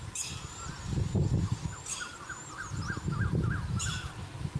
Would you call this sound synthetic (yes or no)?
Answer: no